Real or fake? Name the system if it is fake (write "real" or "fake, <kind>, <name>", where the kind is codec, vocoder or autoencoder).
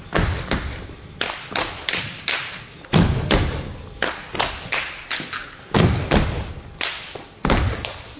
real